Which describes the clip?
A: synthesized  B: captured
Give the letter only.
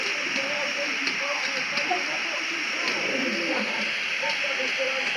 B